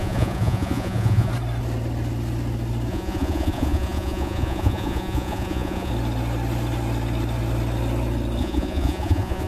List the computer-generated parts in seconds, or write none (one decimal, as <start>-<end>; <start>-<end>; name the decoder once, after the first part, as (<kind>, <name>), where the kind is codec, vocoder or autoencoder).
0.0-1.3 (vocoder, Vocos); 2.9-5.9; 8.4-9.5